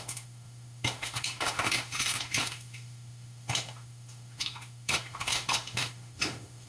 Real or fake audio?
fake